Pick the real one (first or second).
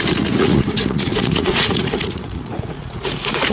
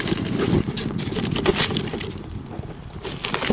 second